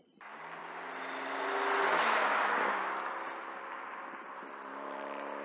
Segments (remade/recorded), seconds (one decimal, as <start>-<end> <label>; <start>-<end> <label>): 0.0-5.4 recorded